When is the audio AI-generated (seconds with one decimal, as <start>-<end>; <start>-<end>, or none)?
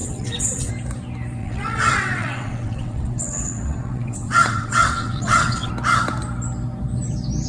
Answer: 0.0-0.7; 1.4-5.7